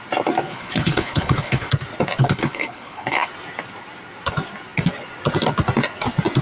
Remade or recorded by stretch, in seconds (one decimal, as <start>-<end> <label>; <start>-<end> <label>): 0.0-0.5 recorded; 0.5-1.7 remade; 1.7-2.2 recorded; 2.2-3.3 remade; 3.3-6.4 recorded